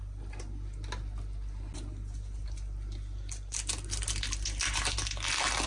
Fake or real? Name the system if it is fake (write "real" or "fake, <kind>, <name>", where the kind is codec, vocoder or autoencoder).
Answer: real